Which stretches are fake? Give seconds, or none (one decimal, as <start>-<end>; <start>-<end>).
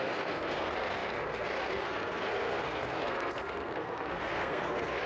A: 0.0-5.1